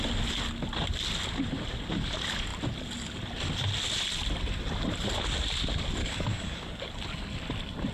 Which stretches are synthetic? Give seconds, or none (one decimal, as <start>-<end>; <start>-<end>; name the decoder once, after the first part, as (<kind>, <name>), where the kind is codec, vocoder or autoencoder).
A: 6.0-6.9 (codec, DAC)

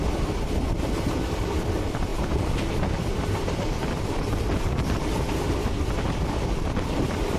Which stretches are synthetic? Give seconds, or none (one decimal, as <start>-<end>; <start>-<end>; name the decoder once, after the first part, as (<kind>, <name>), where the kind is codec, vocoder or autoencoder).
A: none

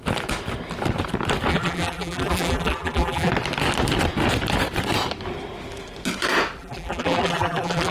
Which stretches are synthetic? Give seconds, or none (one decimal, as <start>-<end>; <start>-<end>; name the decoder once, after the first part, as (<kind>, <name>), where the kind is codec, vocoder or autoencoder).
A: 1.5-3.3 (vocoder, BigVGAN v2); 6.6-7.9

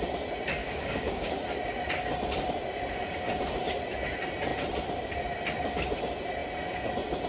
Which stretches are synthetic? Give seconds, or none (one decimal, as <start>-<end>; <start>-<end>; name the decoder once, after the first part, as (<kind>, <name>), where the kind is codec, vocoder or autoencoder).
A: 0.6-1.3 (codec, DAC)

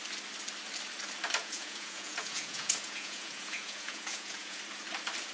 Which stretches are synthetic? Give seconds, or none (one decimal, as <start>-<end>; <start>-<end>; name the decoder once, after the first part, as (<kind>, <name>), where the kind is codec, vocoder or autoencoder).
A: 1.4-4.6 (vocoder, Vocos)

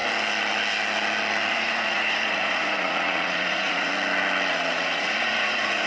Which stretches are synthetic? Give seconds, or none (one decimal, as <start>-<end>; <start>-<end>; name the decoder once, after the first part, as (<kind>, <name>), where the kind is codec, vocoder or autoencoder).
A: 1.5-3.9 (vocoder, Vocos); 4.5-5.9

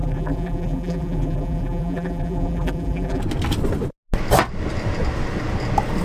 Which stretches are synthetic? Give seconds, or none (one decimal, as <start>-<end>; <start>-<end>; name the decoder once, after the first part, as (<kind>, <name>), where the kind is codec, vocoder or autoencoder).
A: 0.0-3.2 (vocoder, BigVGAN v2)